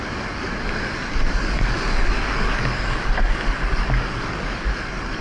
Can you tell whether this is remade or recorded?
remade